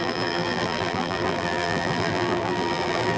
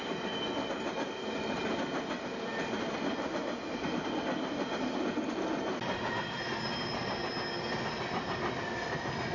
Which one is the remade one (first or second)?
first